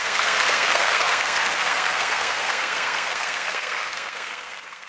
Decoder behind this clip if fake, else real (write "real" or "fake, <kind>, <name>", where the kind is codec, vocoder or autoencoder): fake, codec, SNAC